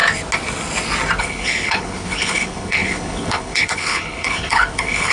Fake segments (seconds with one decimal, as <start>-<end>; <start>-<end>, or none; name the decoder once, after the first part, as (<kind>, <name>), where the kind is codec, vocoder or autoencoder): 1.2-5.1 (codec, HILCodec)